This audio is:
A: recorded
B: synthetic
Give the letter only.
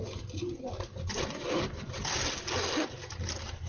A